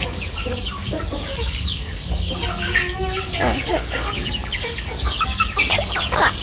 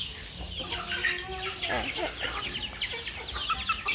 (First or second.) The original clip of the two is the second